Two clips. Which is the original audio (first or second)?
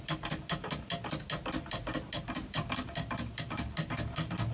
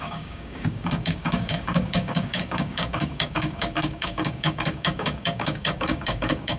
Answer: first